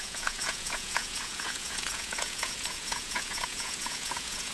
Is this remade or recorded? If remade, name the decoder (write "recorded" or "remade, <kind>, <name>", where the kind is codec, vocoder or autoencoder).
remade, vocoder, Vocos